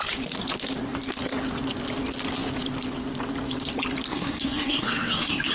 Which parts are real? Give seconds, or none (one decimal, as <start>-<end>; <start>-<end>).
0.0-4.1